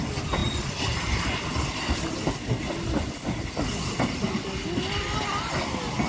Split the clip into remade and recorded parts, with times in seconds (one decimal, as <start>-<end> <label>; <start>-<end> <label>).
0.0-6.1 recorded